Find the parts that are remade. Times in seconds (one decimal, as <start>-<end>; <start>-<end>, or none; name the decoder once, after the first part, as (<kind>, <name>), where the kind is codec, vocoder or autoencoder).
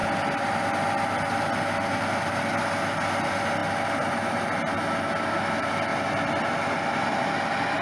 none